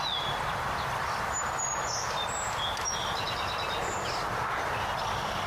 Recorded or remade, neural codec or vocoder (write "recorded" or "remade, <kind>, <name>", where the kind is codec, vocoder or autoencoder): recorded